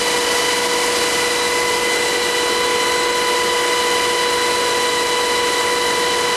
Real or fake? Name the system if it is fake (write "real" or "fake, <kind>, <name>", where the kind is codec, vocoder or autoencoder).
real